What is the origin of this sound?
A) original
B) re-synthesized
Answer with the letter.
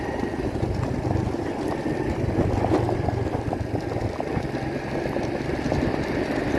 A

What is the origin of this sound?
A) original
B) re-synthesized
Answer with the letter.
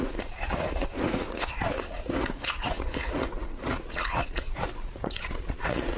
B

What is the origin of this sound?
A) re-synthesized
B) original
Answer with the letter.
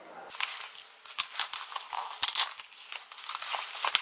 B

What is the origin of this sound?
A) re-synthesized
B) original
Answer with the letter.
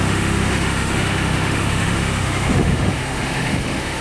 A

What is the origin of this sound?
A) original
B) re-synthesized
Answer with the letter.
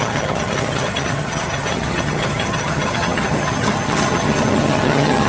B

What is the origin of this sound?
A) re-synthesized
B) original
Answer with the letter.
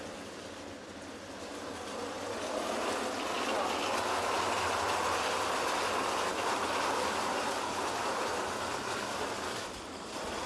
B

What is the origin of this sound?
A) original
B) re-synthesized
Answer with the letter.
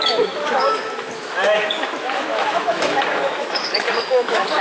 B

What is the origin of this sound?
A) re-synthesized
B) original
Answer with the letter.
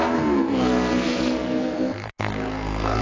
A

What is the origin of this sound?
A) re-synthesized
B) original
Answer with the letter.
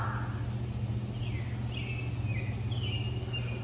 B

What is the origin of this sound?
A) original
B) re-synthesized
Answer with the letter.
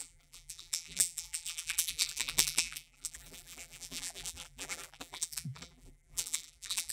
B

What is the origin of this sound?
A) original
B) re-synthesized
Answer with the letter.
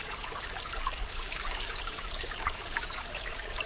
B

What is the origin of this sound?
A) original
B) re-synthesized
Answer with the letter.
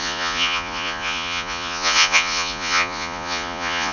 B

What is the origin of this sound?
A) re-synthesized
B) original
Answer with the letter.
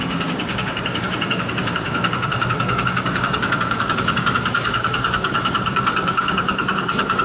A